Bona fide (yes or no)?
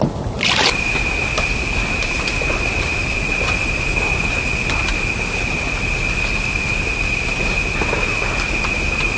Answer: yes